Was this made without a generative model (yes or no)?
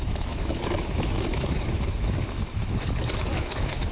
no